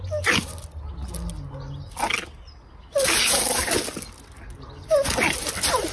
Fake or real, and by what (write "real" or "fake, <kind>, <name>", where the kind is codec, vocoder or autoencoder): real